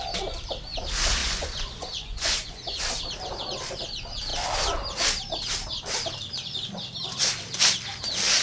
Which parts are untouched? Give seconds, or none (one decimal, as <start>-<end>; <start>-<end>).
0.0-1.2; 2.8-8.4